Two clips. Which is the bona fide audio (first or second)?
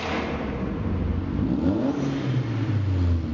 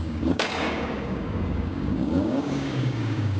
first